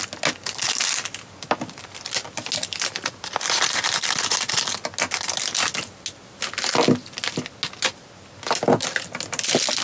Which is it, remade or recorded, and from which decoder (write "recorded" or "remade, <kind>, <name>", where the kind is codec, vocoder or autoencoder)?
recorded